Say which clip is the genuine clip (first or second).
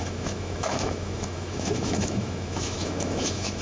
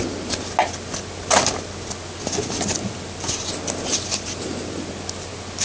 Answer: second